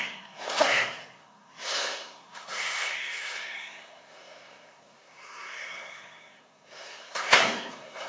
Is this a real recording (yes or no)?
no